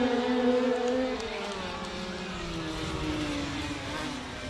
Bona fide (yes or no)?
yes